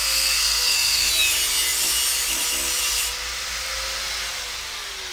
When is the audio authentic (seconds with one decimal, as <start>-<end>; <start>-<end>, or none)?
1.1-5.1